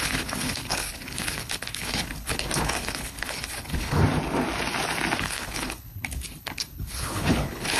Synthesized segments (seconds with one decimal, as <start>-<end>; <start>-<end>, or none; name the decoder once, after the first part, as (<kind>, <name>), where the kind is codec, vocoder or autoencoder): 0.0-4.0 (codec, HILCodec); 5.2-7.8

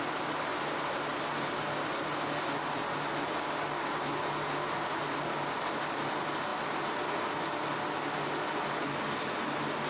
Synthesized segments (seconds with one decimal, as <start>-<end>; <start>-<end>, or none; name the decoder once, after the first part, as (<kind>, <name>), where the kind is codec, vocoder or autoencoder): none